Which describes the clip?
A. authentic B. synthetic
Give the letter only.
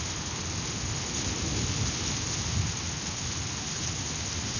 A